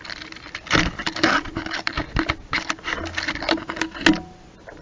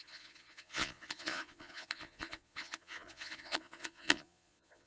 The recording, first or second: first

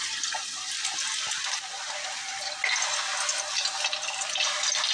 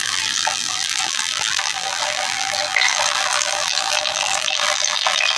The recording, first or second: first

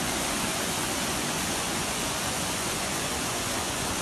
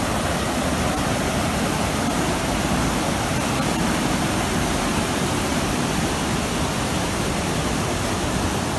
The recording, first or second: second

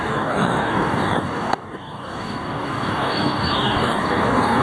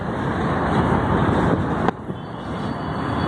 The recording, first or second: second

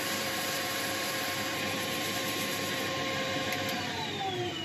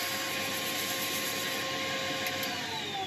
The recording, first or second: second